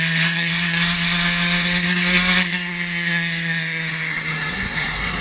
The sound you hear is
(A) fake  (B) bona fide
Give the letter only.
A